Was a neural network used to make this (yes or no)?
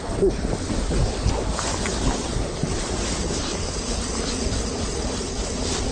no